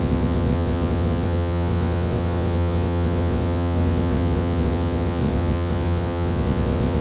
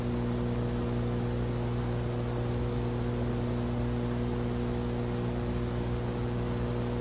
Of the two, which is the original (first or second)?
second